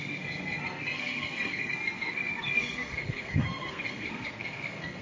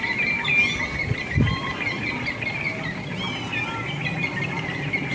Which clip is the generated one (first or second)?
first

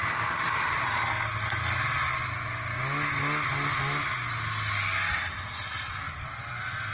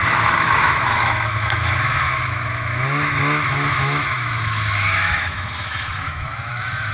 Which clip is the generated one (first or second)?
second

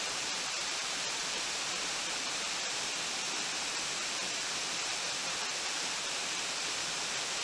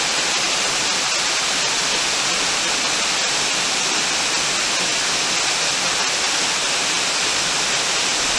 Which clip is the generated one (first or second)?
first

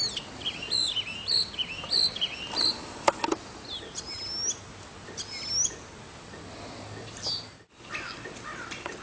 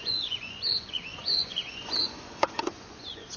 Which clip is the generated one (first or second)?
second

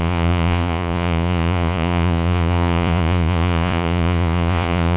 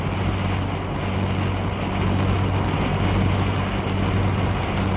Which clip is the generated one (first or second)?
first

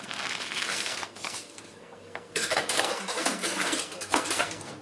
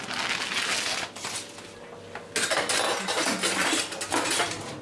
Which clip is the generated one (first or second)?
first